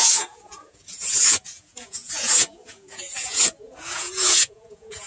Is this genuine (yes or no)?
no